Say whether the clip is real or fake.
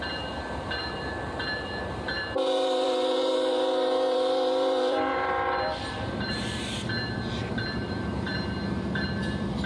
fake